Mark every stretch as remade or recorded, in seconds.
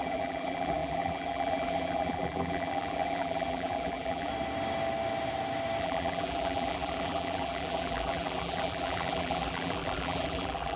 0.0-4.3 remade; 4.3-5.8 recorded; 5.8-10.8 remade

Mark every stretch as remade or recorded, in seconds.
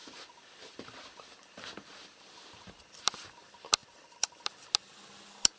0.0-3.4 remade; 3.4-3.8 recorded; 3.8-4.7 remade; 4.7-5.6 recorded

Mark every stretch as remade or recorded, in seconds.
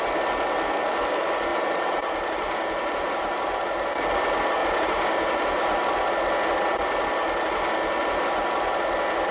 0.0-1.5 recorded; 1.5-4.1 remade; 4.1-4.6 recorded; 4.6-5.6 remade; 5.6-9.3 recorded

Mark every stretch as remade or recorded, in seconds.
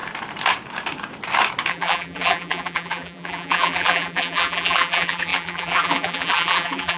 0.0-1.7 recorded; 1.7-7.0 remade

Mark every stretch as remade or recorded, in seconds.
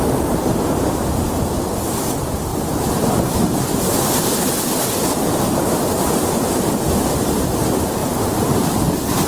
0.0-2.5 recorded; 2.5-3.1 remade; 3.1-8.0 recorded; 8.0-8.7 remade; 8.7-9.3 recorded